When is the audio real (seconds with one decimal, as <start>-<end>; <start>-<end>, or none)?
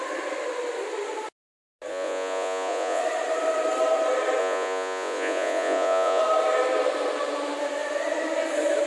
0.0-1.9; 3.0-4.4; 6.2-8.9